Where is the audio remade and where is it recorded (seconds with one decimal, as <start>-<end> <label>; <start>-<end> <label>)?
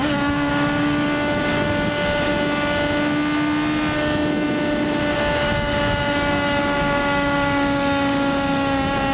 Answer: 0.0-2.3 remade; 2.3-5.1 recorded; 5.1-9.1 remade